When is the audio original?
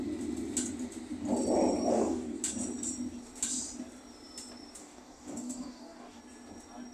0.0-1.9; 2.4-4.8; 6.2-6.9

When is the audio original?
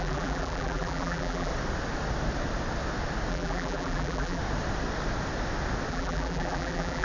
1.5-3.3; 4.4-5.9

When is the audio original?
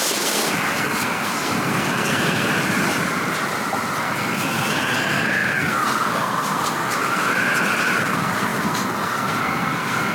2.5-4.0; 7.3-8.0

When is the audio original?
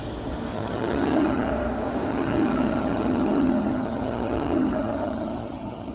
0.0-0.5; 1.5-2.1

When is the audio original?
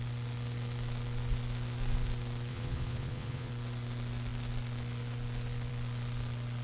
0.0-2.5; 3.5-6.6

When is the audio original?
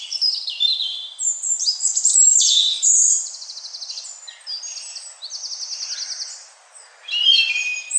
0.0-0.7; 2.7-8.0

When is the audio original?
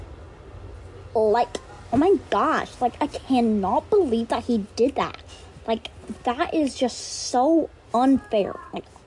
0.0-9.1